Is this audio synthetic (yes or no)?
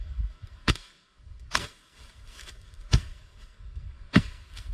yes